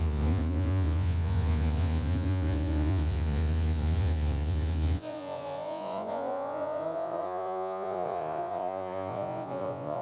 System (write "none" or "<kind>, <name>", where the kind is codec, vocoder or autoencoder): vocoder, Vocos